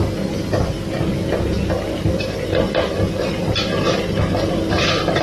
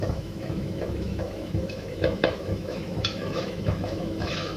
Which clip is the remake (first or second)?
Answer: second